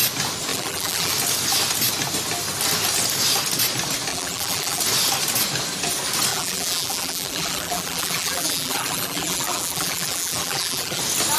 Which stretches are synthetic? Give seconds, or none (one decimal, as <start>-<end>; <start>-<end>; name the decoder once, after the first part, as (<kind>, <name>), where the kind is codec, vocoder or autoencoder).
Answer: 0.5-1.1 (vocoder, BigVGAN v2); 4.1-4.8; 6.3-11.0